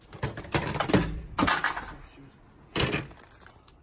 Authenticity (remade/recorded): recorded